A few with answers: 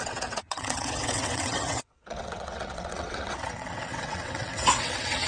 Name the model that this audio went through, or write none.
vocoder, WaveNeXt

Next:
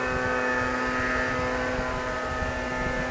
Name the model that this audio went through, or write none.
none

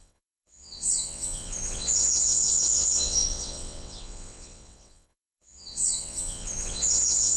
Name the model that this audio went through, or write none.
vocoder, WaveNeXt